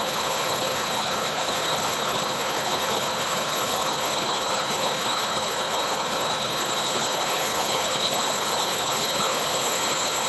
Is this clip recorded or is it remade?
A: remade